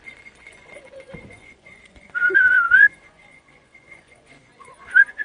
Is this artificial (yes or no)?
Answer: yes